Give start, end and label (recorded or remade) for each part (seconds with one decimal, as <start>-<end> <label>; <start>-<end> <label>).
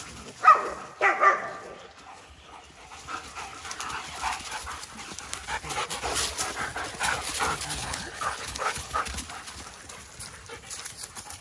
0.0-2.1 recorded; 2.1-2.6 remade; 2.6-7.8 recorded; 7.8-9.0 remade; 9.0-11.4 recorded